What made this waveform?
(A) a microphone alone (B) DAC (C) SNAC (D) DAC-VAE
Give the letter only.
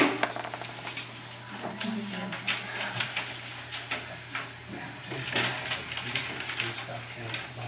A